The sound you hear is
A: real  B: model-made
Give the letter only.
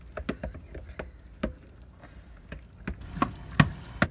A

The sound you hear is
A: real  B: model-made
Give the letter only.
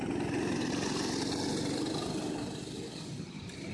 A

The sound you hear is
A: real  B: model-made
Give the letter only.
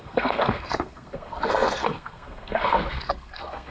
B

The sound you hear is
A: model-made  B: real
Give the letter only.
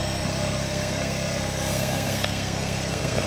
A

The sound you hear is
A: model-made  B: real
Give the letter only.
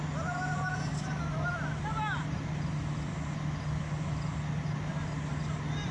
B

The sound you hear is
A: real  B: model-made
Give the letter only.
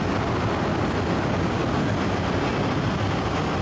A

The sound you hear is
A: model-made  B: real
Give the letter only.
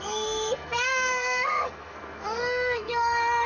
A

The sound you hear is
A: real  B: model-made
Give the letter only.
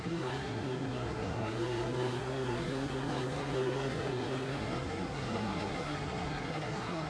B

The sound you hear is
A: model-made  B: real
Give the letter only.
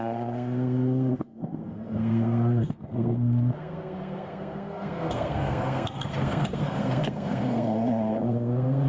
A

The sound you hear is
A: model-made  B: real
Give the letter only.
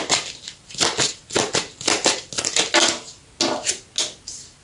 B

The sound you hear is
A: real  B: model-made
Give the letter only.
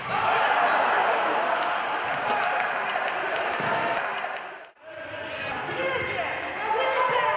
A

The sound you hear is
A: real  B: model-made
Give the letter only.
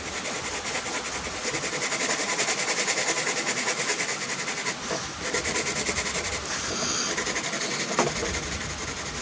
A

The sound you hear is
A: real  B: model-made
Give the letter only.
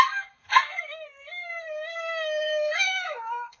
B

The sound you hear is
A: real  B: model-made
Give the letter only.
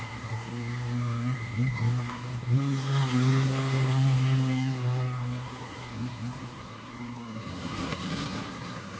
B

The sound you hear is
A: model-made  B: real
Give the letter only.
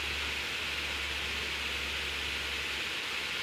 B